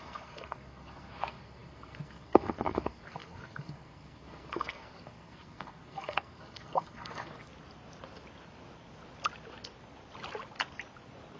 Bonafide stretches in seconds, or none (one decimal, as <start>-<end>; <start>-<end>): 7.5-11.4